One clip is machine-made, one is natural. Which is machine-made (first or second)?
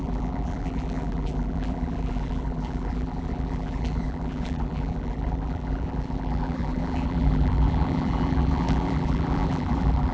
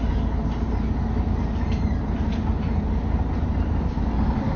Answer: first